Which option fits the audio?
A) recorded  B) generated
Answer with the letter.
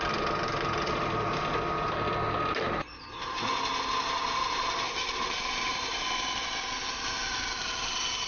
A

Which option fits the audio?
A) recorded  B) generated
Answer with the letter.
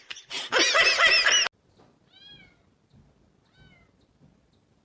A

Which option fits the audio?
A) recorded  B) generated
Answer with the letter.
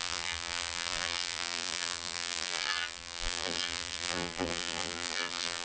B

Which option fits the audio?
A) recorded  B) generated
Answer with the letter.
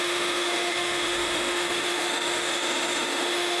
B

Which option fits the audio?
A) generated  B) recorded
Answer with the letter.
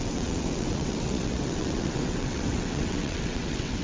A